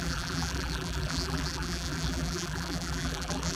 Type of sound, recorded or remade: remade